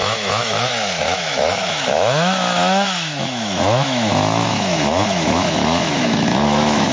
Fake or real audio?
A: fake